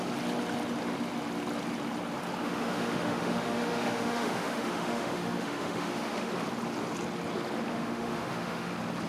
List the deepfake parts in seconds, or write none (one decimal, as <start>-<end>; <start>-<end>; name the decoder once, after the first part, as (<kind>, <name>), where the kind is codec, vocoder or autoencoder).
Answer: 2.4-6.3 (autoencoder, DAC-VAE); 7.7-8.7